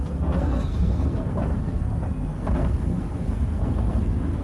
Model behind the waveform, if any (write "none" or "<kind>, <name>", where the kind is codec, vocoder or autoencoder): codec, SNAC